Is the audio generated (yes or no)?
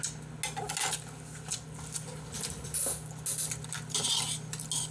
no